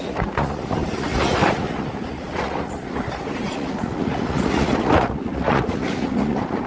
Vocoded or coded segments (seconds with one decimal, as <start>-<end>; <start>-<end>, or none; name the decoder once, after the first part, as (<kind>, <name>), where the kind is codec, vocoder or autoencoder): 0.0-6.7 (vocoder, Vocos)